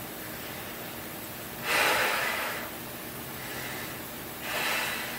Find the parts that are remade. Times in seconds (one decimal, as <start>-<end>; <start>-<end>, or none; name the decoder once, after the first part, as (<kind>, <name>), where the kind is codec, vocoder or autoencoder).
2.0-2.6 (autoencoder, DAC-VAE)